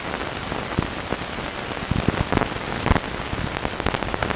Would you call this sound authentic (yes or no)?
yes